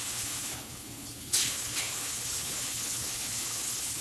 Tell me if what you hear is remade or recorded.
remade